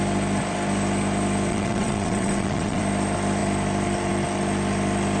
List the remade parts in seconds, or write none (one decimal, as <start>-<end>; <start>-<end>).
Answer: 1.5-2.8